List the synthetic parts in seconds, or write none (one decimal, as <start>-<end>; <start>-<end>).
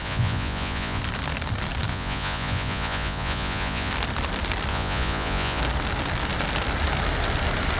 0.0-1.0; 1.9-3.9; 4.7-5.6